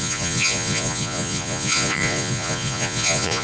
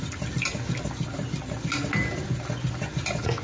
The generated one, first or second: first